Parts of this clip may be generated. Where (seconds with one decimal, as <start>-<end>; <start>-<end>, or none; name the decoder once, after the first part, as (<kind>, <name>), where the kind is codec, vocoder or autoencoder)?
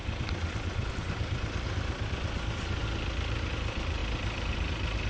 0.0-2.8 (vocoder, BigVGAN v2); 3.5-5.1